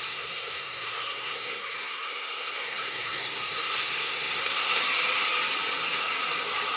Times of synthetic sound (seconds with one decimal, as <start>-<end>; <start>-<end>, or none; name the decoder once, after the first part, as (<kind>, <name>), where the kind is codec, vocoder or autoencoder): 0.0-4.8 (codec, SNAC)